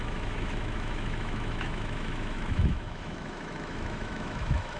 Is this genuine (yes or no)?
no